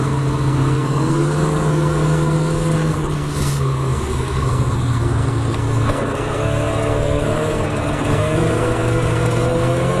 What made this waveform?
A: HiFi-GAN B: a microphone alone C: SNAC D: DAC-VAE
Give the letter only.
C